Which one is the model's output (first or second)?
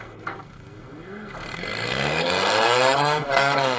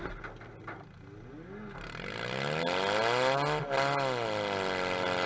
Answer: first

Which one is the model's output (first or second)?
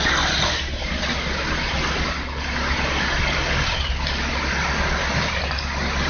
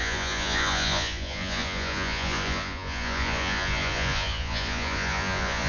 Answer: second